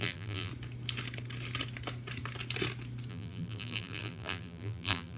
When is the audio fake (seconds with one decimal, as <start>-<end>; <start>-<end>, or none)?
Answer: 0.0-0.5; 3.1-5.2